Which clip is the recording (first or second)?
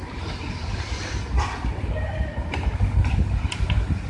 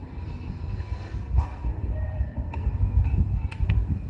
first